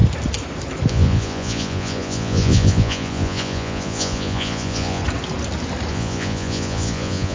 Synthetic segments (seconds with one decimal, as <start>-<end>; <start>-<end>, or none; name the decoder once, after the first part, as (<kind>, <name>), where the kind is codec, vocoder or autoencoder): 0.9-5.0 (vocoder, Vocos); 5.9-7.3